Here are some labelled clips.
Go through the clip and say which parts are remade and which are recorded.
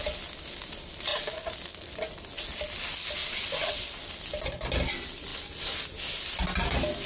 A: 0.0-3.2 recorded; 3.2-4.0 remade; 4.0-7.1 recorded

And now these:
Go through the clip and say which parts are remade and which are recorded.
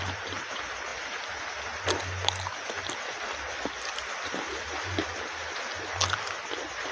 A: 0.0-6.9 recorded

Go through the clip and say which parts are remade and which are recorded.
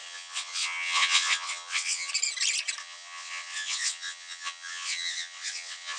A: 0.0-2.1 remade; 2.1-2.8 recorded; 2.8-6.0 remade